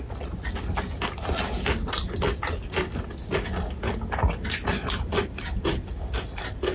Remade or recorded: recorded